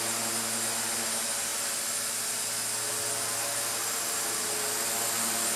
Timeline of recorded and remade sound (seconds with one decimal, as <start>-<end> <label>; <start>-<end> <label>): 0.0-5.6 recorded